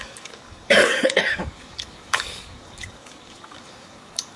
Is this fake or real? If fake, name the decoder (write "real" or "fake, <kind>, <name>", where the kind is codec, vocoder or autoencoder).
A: fake, codec, DAC